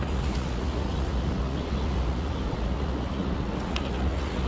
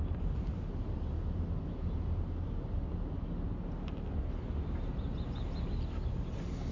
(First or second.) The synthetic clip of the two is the first